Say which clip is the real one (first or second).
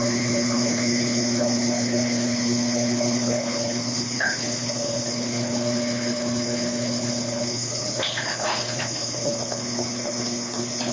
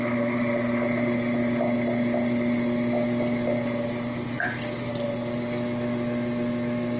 second